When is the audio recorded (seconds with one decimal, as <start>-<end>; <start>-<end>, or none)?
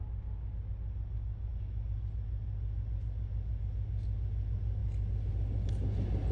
0.0-6.3